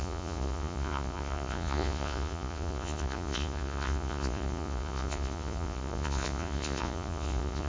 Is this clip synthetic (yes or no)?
yes